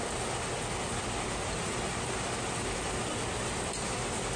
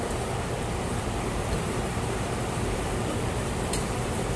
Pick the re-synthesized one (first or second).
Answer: second